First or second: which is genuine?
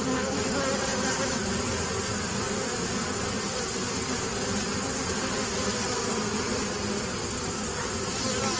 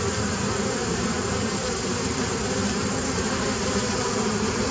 first